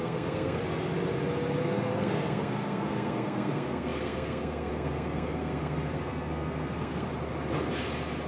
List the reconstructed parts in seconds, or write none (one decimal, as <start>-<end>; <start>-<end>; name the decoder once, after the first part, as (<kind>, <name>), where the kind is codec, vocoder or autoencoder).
0.0-0.6 (codec, SNAC); 1.6-7.1